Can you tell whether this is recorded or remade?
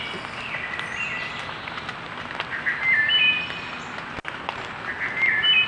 recorded